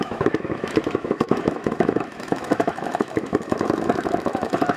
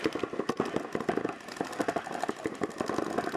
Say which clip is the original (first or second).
second